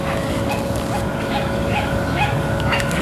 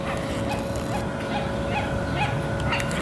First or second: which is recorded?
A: second